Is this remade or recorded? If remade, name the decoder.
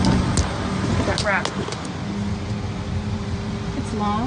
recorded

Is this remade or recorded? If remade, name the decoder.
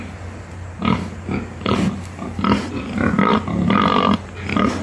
recorded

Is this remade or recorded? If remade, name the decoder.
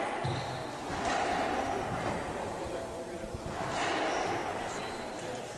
recorded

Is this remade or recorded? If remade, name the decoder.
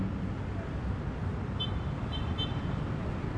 recorded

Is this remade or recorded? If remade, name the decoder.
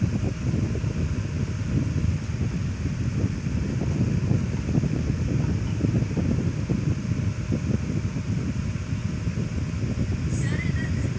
recorded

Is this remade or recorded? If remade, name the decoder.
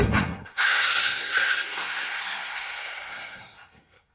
remade, codec, SNAC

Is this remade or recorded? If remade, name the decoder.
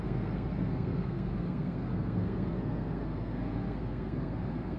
remade, codec, SNAC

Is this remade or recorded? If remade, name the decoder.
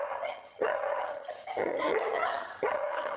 remade, vocoder, HiFi-GAN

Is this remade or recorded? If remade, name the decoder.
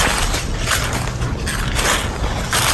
recorded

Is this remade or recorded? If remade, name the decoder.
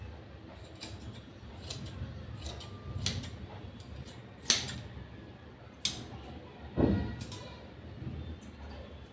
recorded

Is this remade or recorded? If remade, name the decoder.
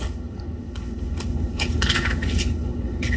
remade, codec, HILCodec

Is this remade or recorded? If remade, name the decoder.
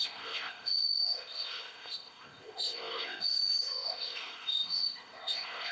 remade, codec, ZipCodec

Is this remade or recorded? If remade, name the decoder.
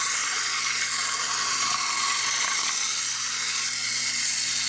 recorded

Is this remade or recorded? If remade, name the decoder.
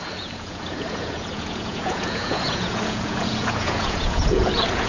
remade, vocoder, Vocos